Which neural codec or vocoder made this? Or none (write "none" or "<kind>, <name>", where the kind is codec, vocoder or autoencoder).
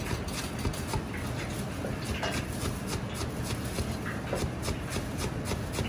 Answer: none